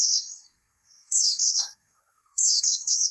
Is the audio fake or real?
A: fake